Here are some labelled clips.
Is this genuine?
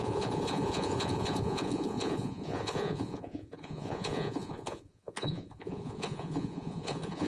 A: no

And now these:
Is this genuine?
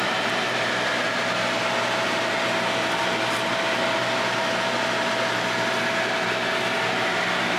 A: yes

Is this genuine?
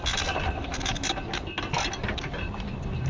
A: yes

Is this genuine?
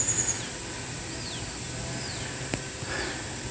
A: yes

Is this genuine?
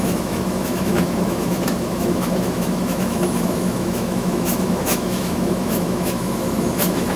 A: no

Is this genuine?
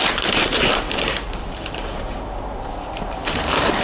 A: no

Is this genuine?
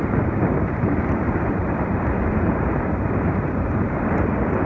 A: no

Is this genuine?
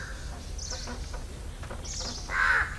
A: yes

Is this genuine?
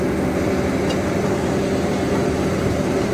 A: yes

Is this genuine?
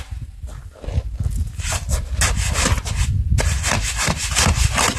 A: yes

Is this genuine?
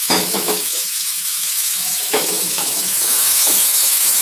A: no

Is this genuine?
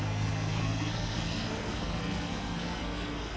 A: no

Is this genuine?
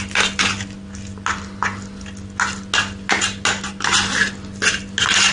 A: yes